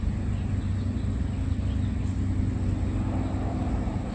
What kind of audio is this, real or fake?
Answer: real